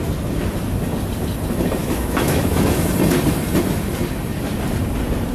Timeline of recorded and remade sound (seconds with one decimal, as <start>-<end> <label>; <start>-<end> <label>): 0.0-1.8 recorded; 1.8-2.9 remade; 2.9-5.3 recorded